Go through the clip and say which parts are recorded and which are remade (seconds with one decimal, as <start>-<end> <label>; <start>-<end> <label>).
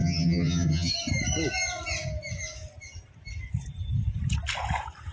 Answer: 0.0-0.9 remade; 0.9-5.1 recorded